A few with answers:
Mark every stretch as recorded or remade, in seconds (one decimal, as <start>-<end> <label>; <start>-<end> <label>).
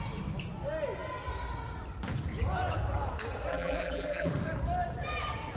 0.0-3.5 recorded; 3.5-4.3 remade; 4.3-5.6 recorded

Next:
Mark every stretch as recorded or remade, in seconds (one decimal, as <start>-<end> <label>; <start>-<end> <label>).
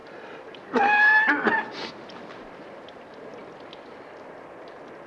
0.0-5.1 recorded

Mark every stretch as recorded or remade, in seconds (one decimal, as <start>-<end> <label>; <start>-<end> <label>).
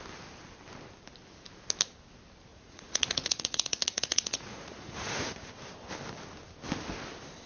0.0-2.5 recorded; 2.5-5.5 remade; 5.5-7.5 recorded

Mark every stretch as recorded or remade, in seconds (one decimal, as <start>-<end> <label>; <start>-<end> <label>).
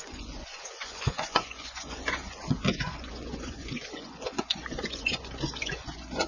0.0-6.3 remade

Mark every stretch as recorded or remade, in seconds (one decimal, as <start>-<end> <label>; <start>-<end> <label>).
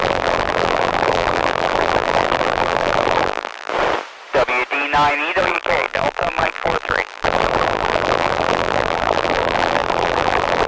0.0-3.7 remade; 3.7-5.4 recorded; 5.4-10.7 remade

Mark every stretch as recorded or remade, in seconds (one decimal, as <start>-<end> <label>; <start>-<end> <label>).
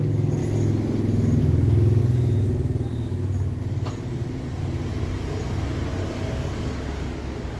0.0-0.4 remade; 0.4-1.4 recorded; 1.4-2.0 remade; 2.0-2.9 recorded; 2.9-3.6 remade; 3.6-6.3 recorded; 6.3-7.6 remade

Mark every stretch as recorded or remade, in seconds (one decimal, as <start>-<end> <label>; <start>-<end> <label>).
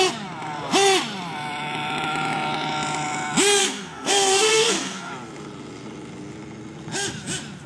0.0-3.6 recorded; 3.6-5.1 remade; 5.1-7.7 recorded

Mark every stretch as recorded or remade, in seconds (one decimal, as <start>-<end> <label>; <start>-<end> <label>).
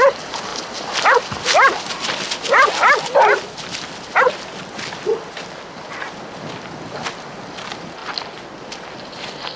0.0-9.6 recorded